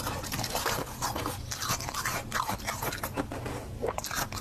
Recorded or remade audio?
recorded